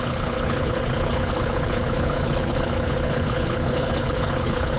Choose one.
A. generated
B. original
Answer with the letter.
A